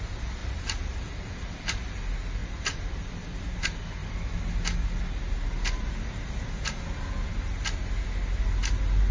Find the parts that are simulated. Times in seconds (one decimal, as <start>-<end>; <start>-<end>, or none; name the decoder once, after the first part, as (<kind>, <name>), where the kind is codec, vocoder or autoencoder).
0.4-2.0 (vocoder, BigVGAN v2); 2.4-3.6